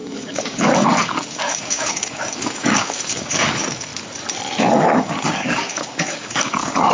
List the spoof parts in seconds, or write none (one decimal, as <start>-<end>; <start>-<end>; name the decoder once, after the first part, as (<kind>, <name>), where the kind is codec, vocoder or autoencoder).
0.0-3.9 (codec, DAC); 4.7-6.9